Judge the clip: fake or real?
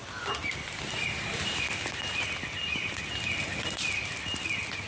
real